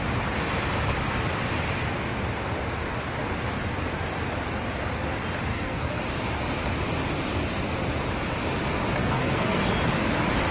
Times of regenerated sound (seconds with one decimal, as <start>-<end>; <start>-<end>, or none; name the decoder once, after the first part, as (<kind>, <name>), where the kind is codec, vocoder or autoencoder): 5.5-6.0 (codec, SNAC); 9.0-9.6